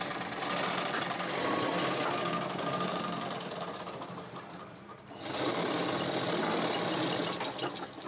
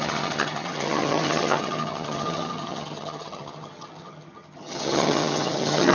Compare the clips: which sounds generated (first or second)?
second